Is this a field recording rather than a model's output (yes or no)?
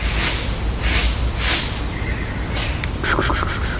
yes